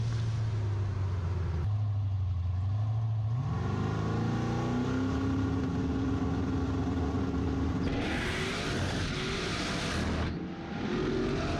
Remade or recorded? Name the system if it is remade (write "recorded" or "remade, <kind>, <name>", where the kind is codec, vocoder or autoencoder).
recorded